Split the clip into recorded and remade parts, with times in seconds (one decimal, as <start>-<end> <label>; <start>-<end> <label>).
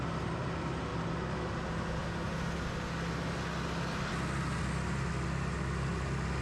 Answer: 0.0-6.4 recorded